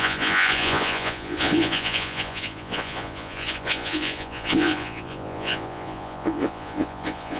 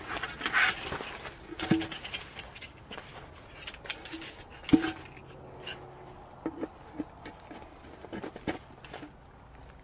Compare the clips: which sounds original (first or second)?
second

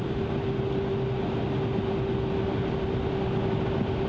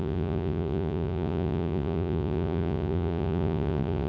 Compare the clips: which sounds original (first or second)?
first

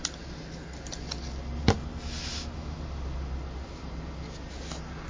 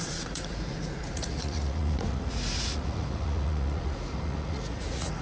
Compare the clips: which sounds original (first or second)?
first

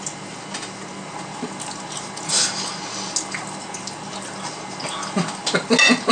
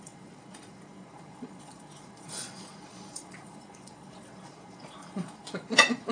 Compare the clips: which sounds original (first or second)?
first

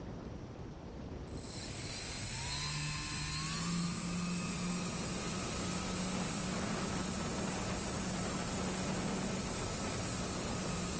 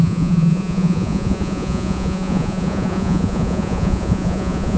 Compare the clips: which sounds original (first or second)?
first